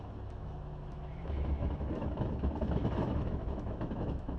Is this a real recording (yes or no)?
no